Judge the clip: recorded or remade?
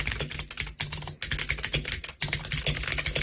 recorded